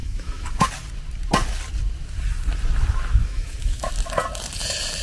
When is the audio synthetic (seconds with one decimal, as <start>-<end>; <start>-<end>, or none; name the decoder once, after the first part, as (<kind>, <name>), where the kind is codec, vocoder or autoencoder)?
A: 0.0-0.7 (autoencoder, DAC-VAE); 3.2-3.9